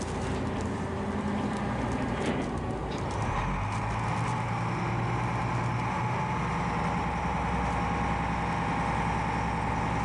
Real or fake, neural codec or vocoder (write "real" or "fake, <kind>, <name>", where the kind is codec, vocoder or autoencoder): real